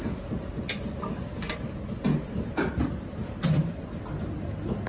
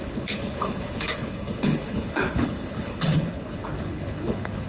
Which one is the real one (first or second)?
first